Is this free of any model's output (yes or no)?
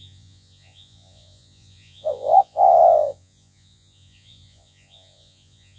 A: no